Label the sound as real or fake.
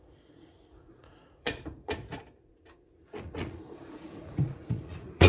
fake